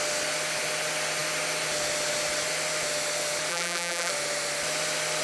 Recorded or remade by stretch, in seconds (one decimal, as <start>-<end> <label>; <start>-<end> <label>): 0.0-3.5 recorded; 3.5-4.1 remade; 4.1-5.2 recorded